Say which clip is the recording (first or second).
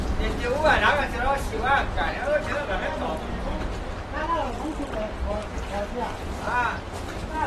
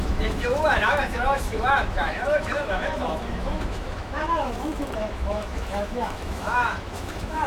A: first